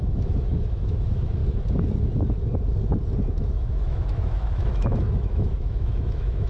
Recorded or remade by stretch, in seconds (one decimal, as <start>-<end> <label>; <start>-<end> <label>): 0.0-1.4 remade; 1.4-3.3 recorded; 3.3-6.5 remade

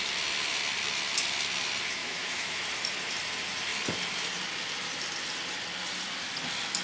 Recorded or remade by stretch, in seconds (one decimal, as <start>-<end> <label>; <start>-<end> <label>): 0.0-2.0 recorded; 2.0-2.7 remade; 2.7-6.8 recorded